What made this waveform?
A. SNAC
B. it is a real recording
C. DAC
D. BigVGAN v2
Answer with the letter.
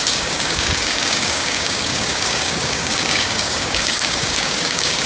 C